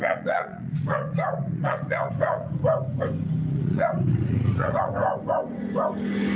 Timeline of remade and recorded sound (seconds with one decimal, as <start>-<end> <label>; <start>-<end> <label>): 0.0-2.6 remade; 2.6-3.5 recorded; 3.5-4.9 remade; 4.9-6.4 recorded